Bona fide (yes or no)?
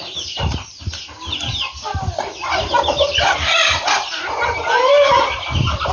yes